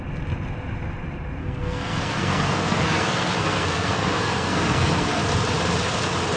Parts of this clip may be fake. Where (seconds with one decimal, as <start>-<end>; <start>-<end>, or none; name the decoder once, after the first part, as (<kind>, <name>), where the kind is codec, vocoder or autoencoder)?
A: 1.4-5.2 (codec, SNAC)